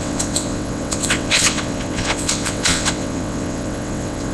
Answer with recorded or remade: remade